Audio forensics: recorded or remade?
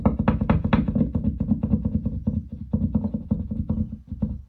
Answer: recorded